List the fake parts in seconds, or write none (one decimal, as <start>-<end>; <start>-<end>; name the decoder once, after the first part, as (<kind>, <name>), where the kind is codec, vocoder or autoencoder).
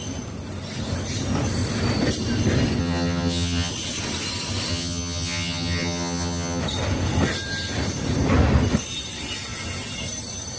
2.8-3.7 (vocoder, HiFi-GAN); 4.7-6.6